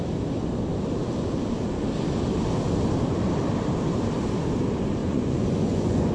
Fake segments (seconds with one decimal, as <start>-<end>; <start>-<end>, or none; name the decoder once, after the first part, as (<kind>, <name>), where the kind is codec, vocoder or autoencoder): 5.0-6.1 (vocoder, Vocos)